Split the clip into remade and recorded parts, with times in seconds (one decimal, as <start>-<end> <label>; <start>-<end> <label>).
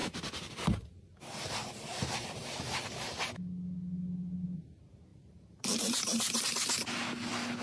0.0-3.3 remade; 3.3-5.1 recorded; 5.1-6.4 remade; 6.4-7.6 recorded